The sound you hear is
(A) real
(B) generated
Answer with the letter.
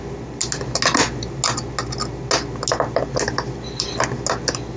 A